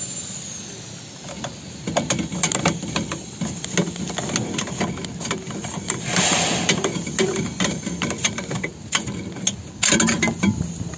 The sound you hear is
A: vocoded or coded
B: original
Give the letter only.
B